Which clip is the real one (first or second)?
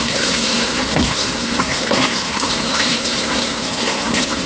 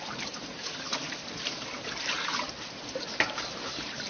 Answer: second